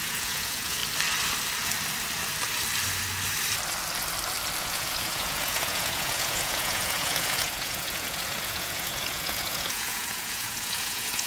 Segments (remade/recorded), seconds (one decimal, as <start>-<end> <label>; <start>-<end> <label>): 0.0-0.8 remade; 0.8-4.6 recorded; 4.6-11.3 remade